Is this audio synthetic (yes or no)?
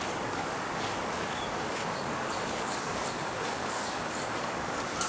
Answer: yes